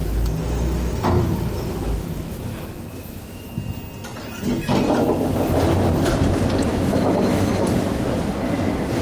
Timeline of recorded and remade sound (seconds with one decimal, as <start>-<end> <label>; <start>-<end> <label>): 0.0-3.4 remade; 3.4-6.7 recorded; 6.7-7.5 remade; 7.5-9.0 recorded